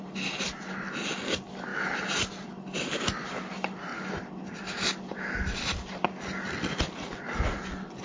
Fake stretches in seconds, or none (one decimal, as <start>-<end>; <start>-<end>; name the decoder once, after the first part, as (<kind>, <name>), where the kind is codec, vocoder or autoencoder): none